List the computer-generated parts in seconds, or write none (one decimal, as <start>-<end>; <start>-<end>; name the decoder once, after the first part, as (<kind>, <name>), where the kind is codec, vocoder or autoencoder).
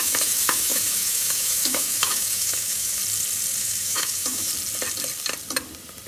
0.0-3.0 (autoencoder, DAC-VAE); 3.6-4.5